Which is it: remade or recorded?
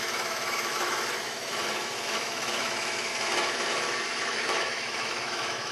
remade